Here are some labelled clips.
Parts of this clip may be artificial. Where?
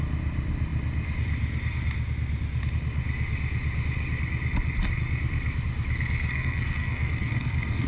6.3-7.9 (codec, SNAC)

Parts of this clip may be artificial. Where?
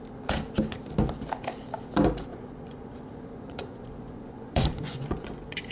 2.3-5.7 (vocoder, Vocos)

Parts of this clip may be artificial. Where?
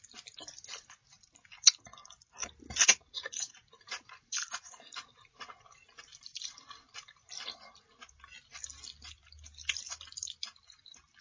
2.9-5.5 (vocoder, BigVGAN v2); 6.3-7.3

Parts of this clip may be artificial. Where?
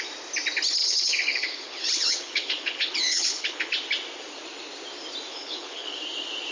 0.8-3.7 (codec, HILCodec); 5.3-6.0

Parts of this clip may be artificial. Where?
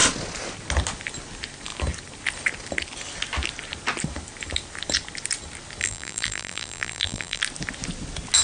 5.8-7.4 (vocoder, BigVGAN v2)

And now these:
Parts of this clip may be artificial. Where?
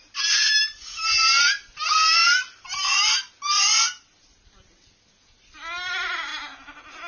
none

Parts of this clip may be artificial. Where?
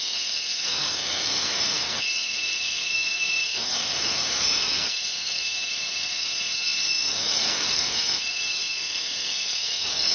0.0-10.1 (codec, SNAC)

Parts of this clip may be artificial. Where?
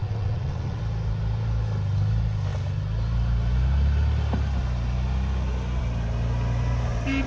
0.0-0.8 (vocoder, WaveNeXt)